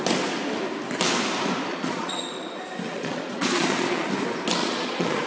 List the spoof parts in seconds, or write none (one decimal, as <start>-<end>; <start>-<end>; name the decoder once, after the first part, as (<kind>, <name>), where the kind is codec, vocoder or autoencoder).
1.7-2.3 (vocoder, Vocos); 2.9-4.1; 4.6-5.3